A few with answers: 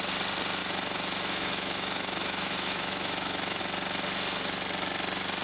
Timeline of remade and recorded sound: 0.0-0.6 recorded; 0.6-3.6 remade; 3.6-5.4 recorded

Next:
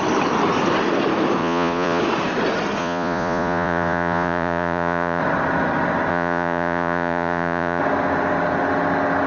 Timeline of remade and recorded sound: 0.0-1.4 recorded; 1.4-2.0 remade; 2.0-2.8 recorded; 2.8-5.2 remade; 5.2-6.1 recorded; 6.1-7.8 remade; 7.8-9.3 recorded

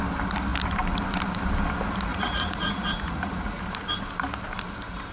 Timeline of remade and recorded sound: 0.0-2.1 recorded; 2.1-3.6 remade; 3.6-5.1 recorded

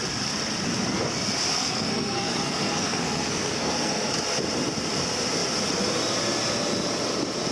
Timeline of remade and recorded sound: 0.0-1.5 recorded; 1.5-4.1 remade; 4.1-7.5 recorded

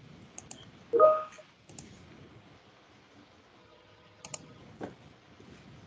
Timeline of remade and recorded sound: 0.0-3.6 recorded; 3.6-4.6 remade; 4.6-5.9 recorded